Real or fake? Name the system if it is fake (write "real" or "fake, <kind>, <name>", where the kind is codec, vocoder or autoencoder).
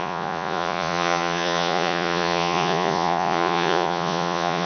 fake, vocoder, Vocos